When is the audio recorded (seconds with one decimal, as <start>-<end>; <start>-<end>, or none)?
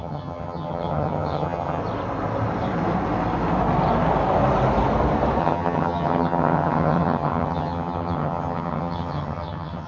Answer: 1.8-5.4